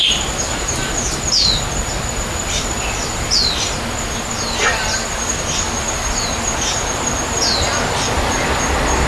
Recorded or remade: recorded